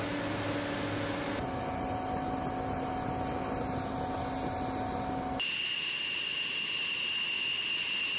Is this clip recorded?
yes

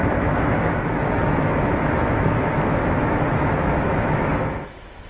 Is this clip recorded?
no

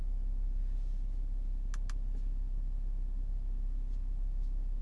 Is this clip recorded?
yes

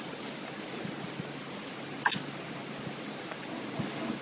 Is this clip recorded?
yes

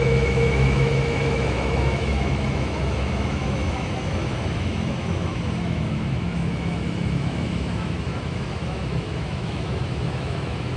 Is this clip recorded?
no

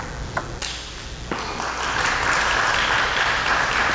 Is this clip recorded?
yes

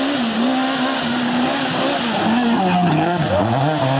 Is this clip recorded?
yes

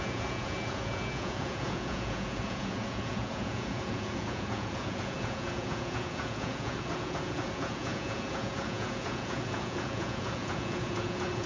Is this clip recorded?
no